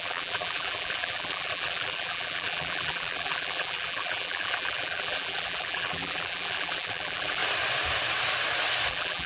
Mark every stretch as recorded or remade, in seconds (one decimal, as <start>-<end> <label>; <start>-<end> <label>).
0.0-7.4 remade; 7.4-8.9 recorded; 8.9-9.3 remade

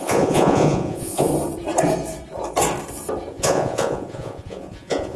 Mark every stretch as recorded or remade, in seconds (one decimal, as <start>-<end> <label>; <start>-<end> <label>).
0.0-1.3 remade; 1.3-3.3 recorded; 3.3-5.2 remade

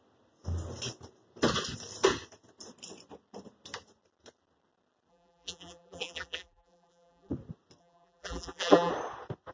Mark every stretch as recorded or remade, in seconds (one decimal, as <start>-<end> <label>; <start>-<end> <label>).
0.0-5.1 recorded; 5.1-7.3 remade; 7.3-7.8 recorded; 7.8-8.9 remade; 8.9-9.5 recorded